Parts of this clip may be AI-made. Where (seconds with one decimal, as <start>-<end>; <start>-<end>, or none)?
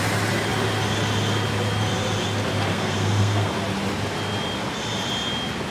2.7-3.5